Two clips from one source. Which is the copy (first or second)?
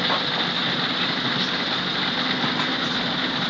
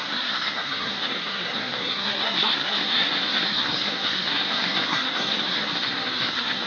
second